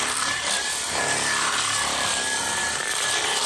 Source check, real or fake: fake